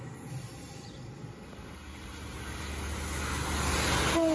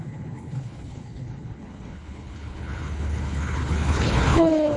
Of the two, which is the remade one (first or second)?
second